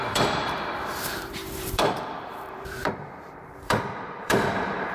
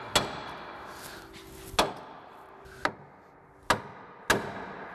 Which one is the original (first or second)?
second